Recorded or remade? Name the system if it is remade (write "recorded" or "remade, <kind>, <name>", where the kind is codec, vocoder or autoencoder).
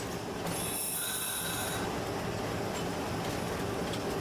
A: recorded